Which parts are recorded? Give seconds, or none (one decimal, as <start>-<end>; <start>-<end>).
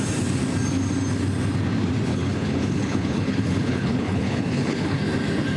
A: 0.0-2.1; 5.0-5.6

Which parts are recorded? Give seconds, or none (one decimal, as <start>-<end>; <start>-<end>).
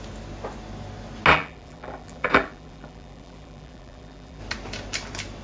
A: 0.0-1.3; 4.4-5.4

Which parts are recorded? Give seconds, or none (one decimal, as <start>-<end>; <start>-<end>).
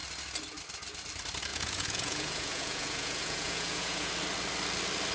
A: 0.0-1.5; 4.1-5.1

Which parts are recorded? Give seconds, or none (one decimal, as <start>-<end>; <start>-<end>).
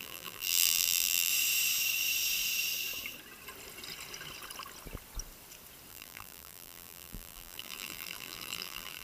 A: 1.3-5.9